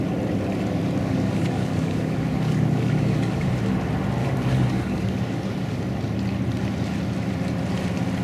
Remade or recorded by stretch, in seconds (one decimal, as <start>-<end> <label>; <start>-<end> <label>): 0.0-1.0 recorded; 1.0-3.5 remade; 3.5-4.2 recorded; 4.2-5.8 remade; 5.8-8.2 recorded